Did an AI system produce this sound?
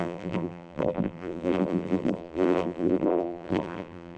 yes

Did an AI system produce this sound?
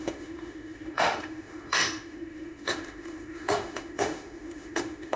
yes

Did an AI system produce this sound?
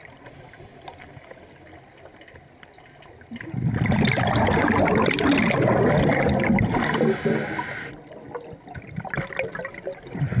no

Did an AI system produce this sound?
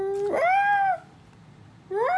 no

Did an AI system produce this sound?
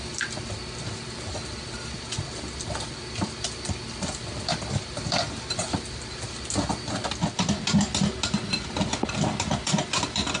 no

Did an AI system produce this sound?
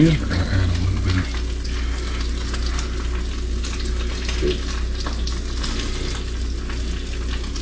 no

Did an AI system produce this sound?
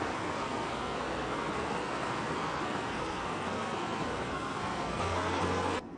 yes